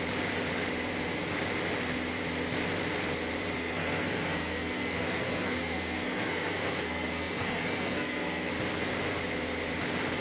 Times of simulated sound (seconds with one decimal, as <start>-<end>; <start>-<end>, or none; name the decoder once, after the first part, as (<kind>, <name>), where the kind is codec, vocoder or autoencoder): 3.6-8.5 (codec, SNAC)